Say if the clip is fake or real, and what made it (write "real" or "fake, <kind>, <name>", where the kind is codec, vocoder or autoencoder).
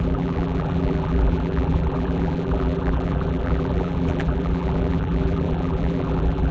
fake, vocoder, BigVGAN v2